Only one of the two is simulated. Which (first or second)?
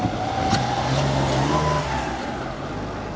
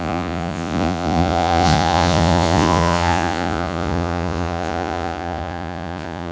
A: second